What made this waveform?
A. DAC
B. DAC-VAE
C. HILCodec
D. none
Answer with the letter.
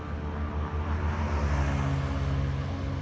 D